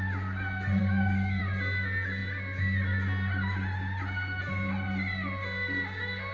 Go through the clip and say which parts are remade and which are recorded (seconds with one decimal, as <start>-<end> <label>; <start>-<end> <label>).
0.0-0.8 recorded; 0.8-1.4 remade; 1.4-6.3 recorded